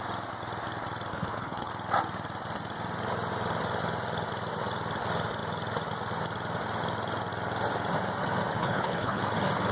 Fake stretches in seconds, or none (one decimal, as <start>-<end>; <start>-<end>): 1.1-1.7; 8.5-9.2